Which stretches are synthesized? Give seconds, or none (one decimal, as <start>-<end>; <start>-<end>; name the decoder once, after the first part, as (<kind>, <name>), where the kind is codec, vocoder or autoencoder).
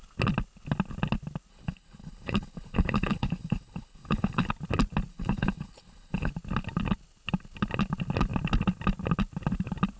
1.5-4.5 (codec, HILCodec); 5.1-6.3